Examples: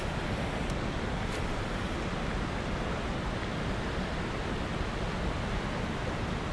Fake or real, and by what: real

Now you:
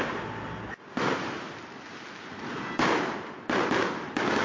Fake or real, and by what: real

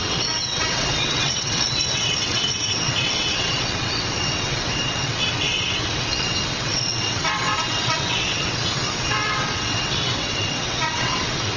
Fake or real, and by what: fake, vocoder, WaveNeXt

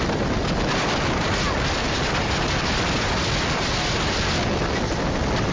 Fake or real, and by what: real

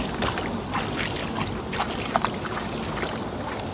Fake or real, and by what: real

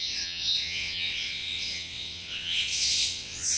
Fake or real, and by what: fake, vocoder, WaveNeXt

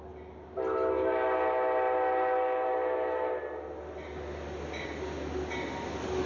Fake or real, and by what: real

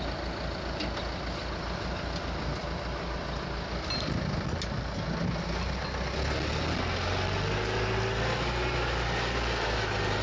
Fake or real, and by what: real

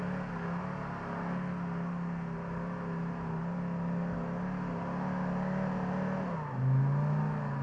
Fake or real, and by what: real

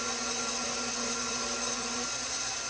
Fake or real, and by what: real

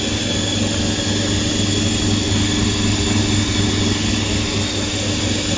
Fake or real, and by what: real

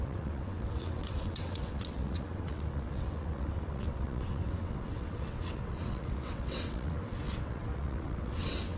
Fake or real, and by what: fake, vocoder, WaveNeXt